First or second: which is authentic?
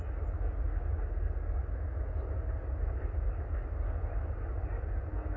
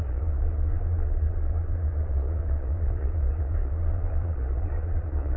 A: first